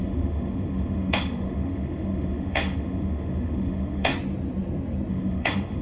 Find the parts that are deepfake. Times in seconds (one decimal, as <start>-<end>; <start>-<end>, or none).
0.0-4.1; 5.1-5.8

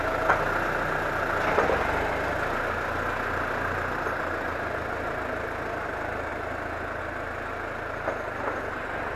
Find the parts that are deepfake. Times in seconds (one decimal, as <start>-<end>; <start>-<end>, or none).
none

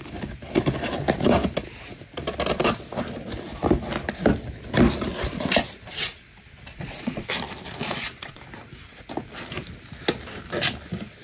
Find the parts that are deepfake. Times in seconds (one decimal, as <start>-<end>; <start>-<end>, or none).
6.7-7.3; 7.8-8.4

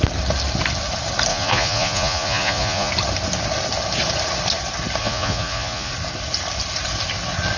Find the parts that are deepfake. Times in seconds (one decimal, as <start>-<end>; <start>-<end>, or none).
1.3-2.9; 5.0-5.9

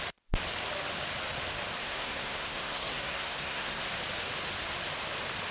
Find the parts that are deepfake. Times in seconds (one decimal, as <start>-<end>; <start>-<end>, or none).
1.8-3.9

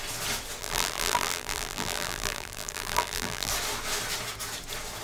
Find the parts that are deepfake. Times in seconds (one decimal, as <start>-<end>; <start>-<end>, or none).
0.6-3.5